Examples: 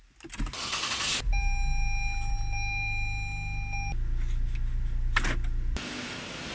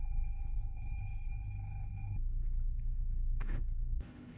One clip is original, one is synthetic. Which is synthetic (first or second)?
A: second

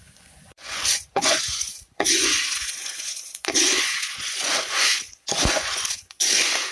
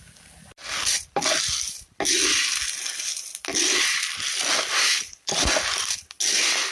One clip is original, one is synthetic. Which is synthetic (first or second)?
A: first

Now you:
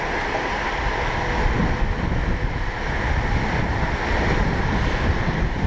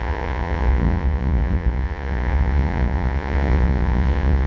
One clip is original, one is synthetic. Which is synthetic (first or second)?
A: second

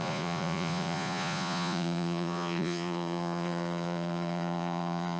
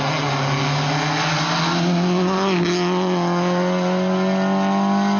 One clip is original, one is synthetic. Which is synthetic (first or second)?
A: first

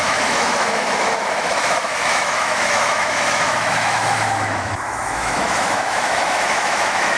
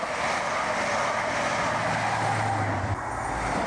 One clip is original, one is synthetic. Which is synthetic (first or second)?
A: first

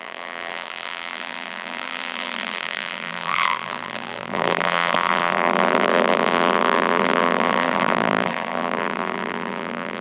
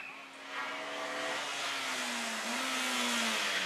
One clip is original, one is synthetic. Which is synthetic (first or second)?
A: first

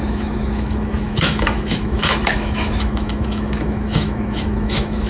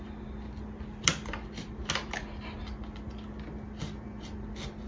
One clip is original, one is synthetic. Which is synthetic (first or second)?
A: first